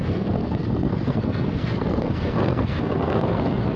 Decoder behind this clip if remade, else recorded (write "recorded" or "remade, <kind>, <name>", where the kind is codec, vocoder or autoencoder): remade, codec, SNAC